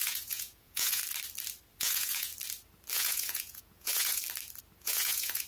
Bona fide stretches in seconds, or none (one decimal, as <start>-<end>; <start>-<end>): 1.0-1.8; 2.3-2.9; 4.2-4.8